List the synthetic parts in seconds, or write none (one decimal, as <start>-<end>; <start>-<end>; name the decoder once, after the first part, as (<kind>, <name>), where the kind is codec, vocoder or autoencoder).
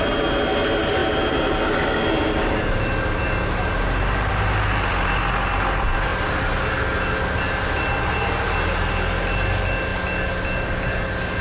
none